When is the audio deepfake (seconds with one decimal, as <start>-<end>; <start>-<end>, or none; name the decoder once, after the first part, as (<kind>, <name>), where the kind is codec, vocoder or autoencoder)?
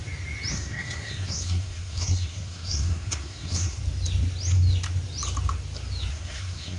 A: 0.5-3.8 (codec, SNAC); 6.1-6.8